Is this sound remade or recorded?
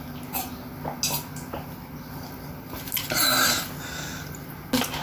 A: recorded